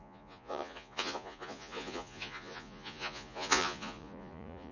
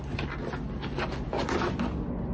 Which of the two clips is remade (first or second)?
first